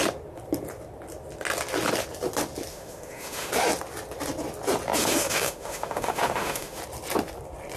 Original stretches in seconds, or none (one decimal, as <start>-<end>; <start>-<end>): 0.0-2.7; 3.5-5.0; 6.8-7.8